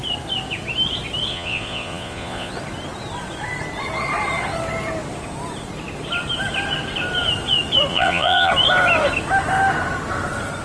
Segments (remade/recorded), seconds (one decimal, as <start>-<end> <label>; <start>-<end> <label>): 0.0-1.3 recorded; 1.3-2.5 remade; 2.5-7.9 recorded; 7.9-8.5 remade; 8.5-10.6 recorded